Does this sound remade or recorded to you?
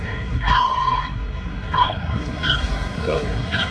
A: remade